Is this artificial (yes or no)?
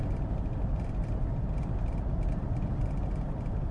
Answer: no